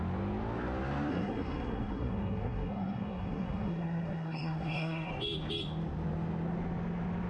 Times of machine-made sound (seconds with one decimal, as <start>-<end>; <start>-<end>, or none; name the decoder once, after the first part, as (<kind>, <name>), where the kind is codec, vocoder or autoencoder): 1.1-5.1 (codec, SNAC)